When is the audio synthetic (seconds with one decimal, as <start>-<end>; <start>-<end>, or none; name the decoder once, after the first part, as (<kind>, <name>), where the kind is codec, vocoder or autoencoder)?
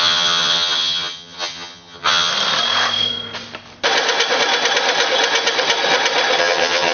0.0-2.3 (vocoder, HiFi-GAN); 6.4-6.9